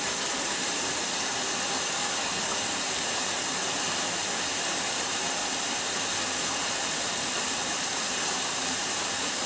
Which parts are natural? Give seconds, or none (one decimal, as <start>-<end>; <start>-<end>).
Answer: 1.0-2.5; 3.6-4.2; 5.4-6.3